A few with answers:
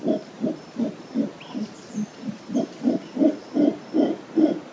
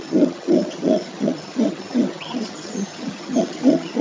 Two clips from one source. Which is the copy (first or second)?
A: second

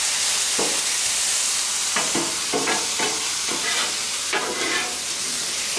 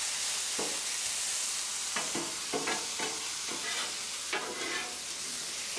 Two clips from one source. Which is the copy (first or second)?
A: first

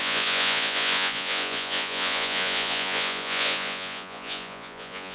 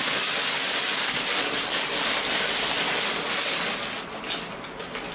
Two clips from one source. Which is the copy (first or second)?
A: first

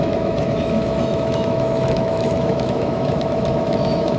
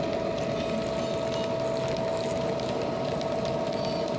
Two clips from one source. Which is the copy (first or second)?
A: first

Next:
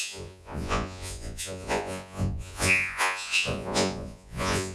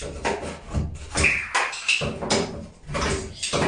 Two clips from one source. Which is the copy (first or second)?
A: first